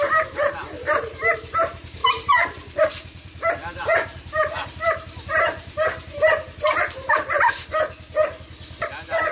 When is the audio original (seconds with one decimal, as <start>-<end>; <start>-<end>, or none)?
7.7-9.3